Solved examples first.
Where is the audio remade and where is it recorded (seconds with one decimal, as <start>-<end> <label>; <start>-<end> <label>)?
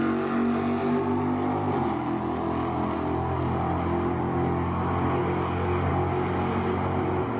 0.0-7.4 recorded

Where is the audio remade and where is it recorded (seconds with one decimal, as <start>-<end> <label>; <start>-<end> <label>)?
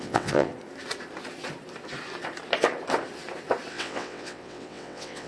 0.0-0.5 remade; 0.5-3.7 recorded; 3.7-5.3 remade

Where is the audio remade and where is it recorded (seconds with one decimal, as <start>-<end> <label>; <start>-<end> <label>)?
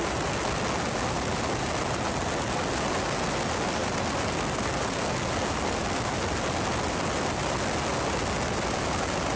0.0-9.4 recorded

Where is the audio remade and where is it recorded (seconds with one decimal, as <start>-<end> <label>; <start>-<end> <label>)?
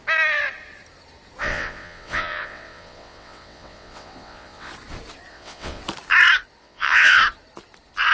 0.0-1.4 recorded; 1.4-4.7 remade; 4.7-5.3 recorded; 5.3-5.8 remade; 5.8-6.6 recorded; 6.6-7.2 remade; 7.2-8.1 recorded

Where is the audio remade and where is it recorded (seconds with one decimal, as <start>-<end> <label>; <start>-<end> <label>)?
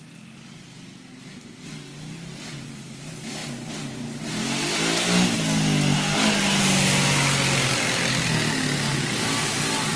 0.0-10.0 recorded